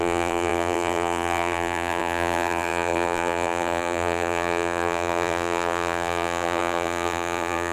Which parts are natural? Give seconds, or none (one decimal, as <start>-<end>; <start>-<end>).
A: none